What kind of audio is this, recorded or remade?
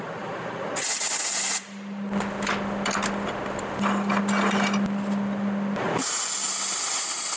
recorded